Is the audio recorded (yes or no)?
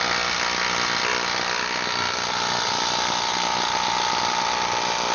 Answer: yes